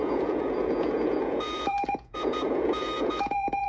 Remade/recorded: remade